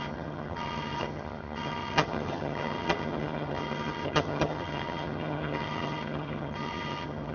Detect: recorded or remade remade